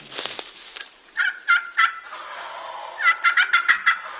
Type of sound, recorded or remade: recorded